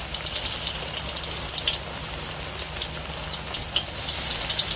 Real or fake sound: real